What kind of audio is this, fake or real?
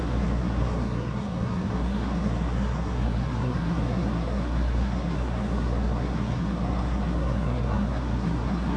fake